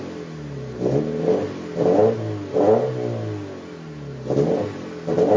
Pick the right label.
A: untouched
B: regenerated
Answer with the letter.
A